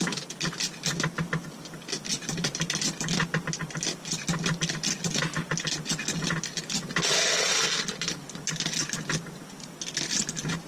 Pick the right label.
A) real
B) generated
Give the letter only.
A